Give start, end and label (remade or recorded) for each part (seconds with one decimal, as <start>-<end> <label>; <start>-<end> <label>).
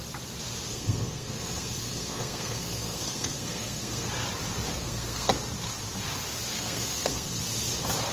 0.0-0.7 recorded; 0.7-4.1 remade; 4.1-4.7 recorded; 4.7-5.3 remade; 5.3-6.5 recorded; 6.5-7.4 remade; 7.4-8.1 recorded